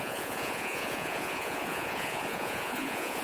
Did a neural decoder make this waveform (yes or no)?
yes